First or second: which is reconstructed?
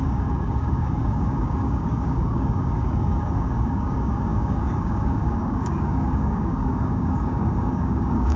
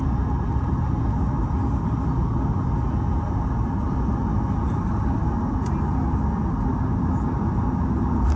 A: first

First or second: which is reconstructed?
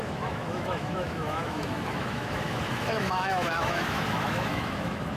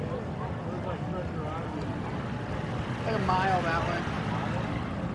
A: first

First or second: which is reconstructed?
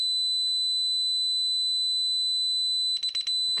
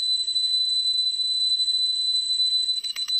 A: second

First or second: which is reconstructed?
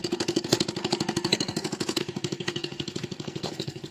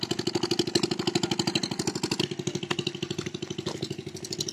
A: first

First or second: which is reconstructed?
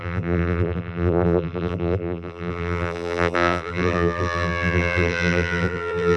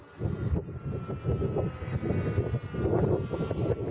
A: first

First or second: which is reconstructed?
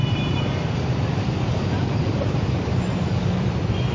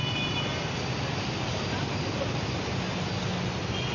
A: first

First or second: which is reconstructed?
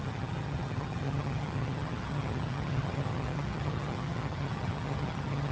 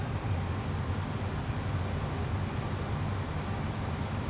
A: first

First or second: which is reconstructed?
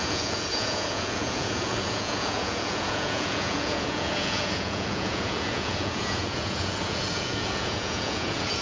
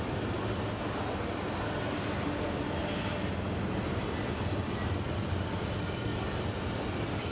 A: first